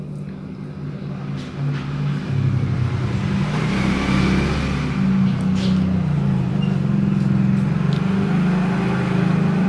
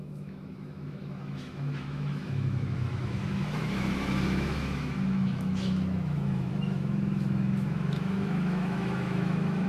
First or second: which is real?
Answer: first